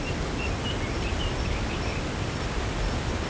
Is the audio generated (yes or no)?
no